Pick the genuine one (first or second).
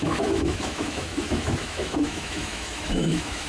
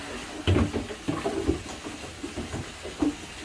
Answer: second